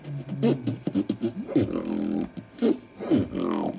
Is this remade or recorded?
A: recorded